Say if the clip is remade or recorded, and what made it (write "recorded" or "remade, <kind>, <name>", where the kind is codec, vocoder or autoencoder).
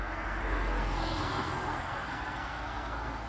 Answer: remade, codec, SNAC